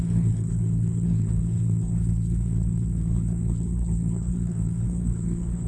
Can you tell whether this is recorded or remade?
remade